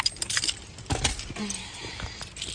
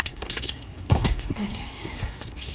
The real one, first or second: first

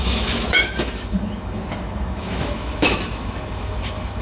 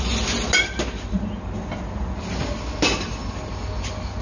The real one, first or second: second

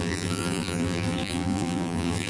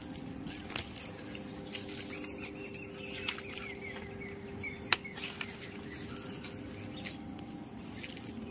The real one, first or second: second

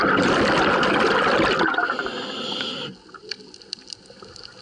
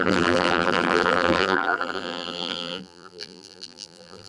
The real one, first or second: first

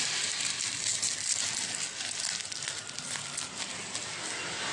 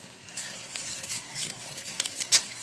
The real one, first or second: first